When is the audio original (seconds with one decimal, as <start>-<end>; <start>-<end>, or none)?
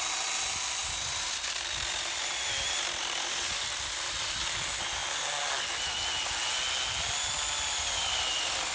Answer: 0.0-8.7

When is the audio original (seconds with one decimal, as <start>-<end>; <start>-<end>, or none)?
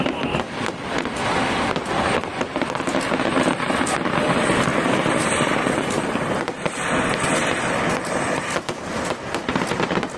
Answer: 0.0-2.3; 3.7-10.2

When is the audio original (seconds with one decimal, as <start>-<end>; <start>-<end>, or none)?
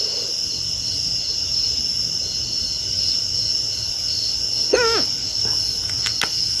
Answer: 0.0-1.3; 1.9-6.6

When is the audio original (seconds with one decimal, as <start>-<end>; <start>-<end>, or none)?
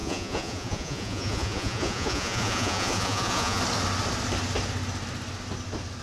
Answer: 3.6-6.0